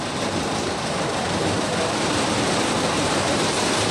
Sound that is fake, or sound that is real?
fake